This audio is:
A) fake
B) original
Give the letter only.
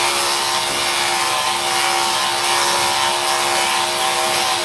B